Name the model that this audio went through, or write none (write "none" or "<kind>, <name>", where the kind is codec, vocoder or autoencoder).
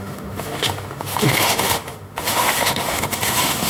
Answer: autoencoder, DAC-VAE